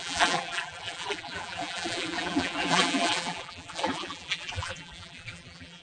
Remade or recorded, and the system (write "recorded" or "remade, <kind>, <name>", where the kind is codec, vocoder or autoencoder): remade, vocoder, BigVGAN v2